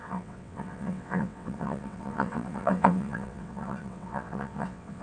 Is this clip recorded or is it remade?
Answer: remade